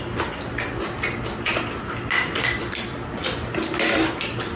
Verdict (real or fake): real